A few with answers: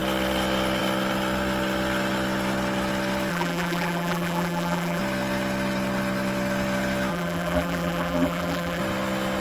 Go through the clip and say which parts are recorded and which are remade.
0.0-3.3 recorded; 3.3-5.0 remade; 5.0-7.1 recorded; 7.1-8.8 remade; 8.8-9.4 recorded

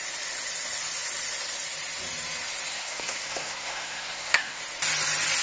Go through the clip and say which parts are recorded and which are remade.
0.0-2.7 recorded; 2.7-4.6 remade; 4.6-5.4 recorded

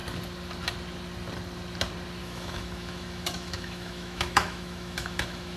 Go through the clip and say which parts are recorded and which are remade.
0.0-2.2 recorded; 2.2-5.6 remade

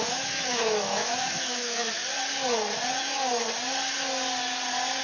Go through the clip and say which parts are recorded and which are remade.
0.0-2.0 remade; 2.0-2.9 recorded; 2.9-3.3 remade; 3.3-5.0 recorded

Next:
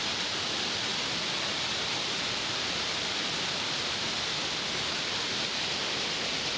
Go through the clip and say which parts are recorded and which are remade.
0.0-6.6 recorded